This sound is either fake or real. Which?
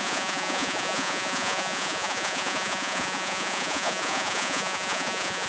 fake